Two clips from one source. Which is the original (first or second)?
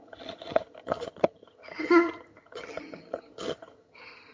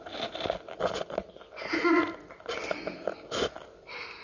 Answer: second